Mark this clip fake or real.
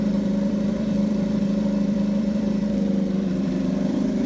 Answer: fake